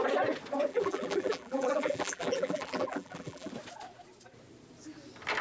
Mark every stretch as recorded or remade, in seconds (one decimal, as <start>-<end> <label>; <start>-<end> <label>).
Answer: 0.0-0.7 recorded; 0.7-3.5 remade; 3.5-5.4 recorded